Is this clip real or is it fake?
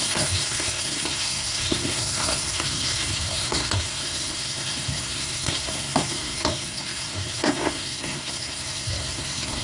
fake